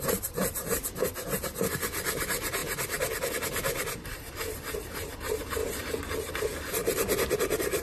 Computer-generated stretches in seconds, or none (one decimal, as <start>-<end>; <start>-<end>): 0.0-6.8; 7.3-7.8